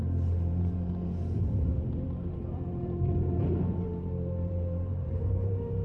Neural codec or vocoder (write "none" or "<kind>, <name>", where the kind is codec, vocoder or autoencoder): vocoder, BigVGAN v2